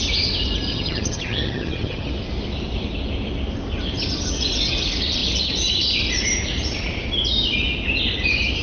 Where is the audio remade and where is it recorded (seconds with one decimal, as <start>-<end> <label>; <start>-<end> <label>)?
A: 0.0-0.7 recorded; 0.7-2.1 remade; 2.1-8.6 recorded